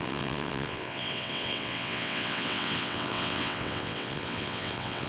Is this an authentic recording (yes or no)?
no